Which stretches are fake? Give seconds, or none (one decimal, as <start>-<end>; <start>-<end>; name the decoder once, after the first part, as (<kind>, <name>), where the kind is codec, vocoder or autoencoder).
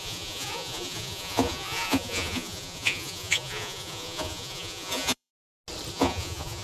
0.0-5.3 (vocoder, Vocos); 5.9-6.6